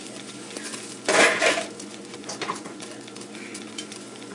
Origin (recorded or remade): remade